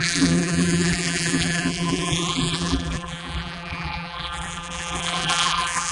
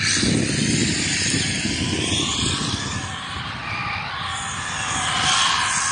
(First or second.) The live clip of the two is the second